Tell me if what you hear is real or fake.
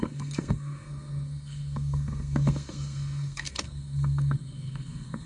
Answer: fake